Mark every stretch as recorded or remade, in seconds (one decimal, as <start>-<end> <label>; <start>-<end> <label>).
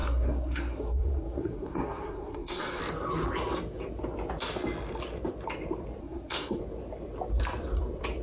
0.0-2.8 remade; 2.8-6.0 recorded; 6.0-6.6 remade; 6.6-8.2 recorded